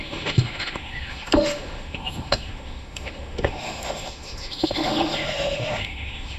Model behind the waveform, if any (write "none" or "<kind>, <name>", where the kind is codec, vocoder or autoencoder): autoencoder, DAC-VAE